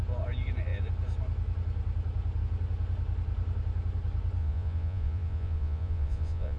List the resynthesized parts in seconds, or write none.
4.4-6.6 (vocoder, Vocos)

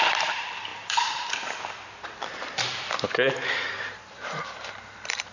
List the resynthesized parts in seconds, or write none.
0.0-5.3 (vocoder, BigVGAN v2)

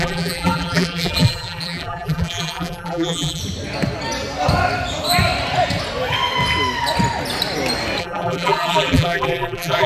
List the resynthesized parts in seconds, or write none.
0.0-3.4 (vocoder, BigVGAN v2); 8.0-9.9

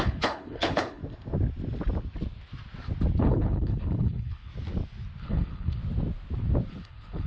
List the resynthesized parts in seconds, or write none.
0.0-1.0 (codec, HILCodec); 3.2-4.5; 5.2-5.8; 6.7-7.3

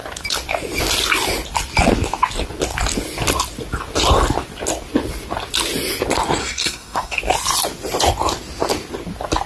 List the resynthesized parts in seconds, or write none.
6.4-7.2 (codec, SNAC)

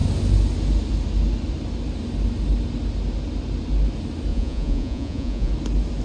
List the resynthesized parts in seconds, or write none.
4.3-5.5 (vocoder, Vocos)